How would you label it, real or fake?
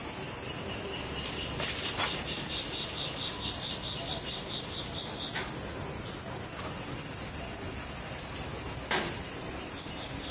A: real